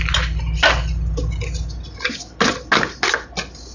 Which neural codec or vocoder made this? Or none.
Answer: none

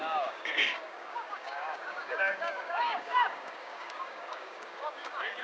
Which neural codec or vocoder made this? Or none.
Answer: codec, DAC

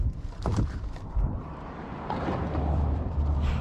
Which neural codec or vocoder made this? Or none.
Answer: vocoder, BigVGAN v2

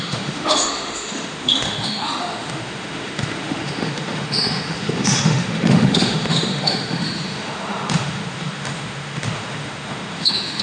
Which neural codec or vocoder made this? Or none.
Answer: autoencoder, DAC-VAE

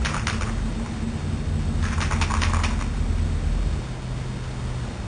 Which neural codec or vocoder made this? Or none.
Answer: none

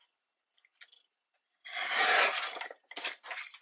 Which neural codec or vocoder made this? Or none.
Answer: none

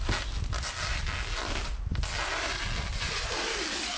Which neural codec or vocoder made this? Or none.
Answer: none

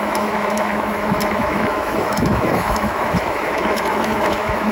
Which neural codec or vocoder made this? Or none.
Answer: autoencoder, DAC-VAE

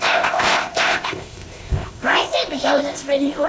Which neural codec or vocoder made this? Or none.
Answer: codec, ZipCodec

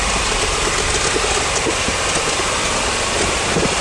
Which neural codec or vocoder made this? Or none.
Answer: none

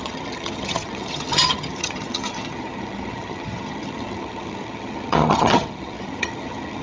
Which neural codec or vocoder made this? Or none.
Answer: vocoder, HiFi-GAN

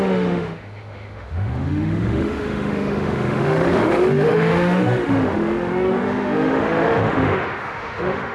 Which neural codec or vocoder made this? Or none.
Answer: autoencoder, DAC-VAE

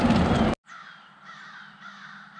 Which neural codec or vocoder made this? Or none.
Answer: none